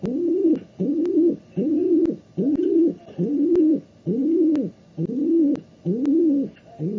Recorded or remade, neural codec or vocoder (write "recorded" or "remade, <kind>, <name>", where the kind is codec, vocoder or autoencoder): remade, vocoder, BigVGAN v2